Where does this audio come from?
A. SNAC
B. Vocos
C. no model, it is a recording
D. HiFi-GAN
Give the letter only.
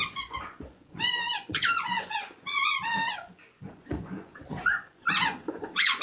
B